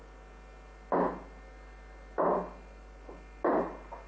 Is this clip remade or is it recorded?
remade